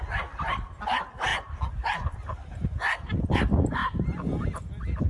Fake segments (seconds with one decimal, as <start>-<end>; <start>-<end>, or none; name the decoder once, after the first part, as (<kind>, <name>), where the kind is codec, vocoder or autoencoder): 1.3-3.2 (vocoder, BigVGAN v2); 3.8-4.6